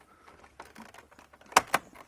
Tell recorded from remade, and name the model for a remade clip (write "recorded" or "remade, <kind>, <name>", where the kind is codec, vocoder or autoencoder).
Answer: recorded